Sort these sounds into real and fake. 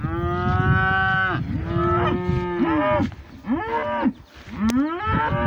real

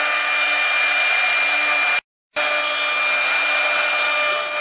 real